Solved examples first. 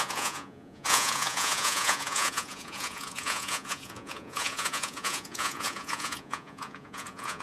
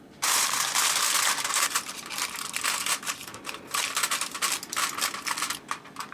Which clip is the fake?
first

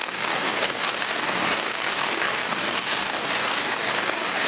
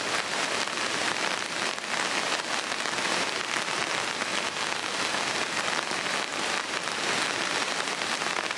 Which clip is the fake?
first